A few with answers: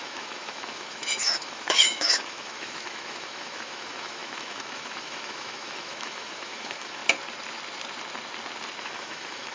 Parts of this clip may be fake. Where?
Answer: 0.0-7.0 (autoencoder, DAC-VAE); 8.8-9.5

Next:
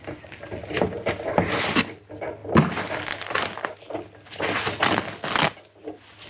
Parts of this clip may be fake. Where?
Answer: none

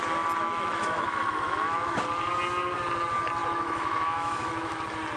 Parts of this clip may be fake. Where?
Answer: 0.4-2.0 (autoencoder, DAC-VAE); 3.4-4.8

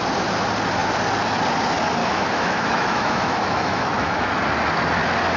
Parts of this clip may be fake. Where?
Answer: 2.0-4.3 (autoencoder, DAC-VAE)

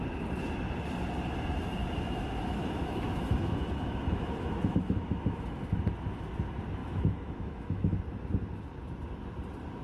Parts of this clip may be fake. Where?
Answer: 1.8-5.6 (autoencoder, DAC-VAE); 6.8-8.0